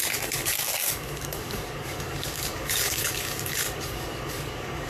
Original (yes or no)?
no